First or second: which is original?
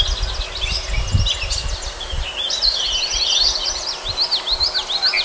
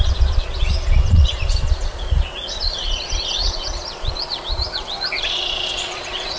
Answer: first